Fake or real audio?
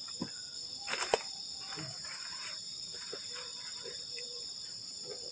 fake